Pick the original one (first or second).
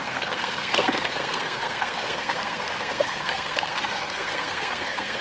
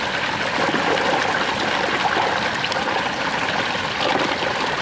second